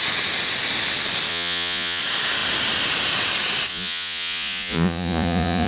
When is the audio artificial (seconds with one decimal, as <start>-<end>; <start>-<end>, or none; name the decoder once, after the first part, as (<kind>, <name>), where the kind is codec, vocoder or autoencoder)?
1.3-2.0 (vocoder, Vocos); 3.7-5.7